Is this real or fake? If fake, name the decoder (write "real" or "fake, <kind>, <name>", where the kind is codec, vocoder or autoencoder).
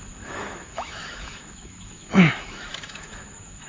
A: fake, autoencoder, DAC-VAE